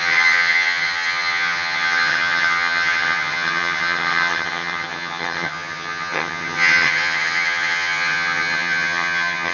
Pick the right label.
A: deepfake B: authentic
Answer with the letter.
A